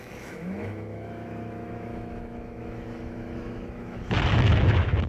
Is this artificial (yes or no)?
yes